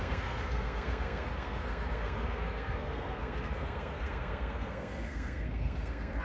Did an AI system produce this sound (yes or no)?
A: yes